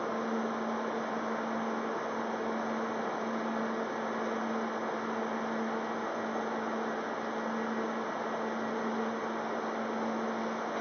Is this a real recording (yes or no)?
yes